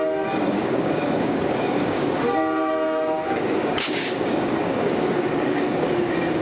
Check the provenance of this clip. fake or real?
fake